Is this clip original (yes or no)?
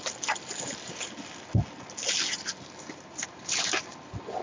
yes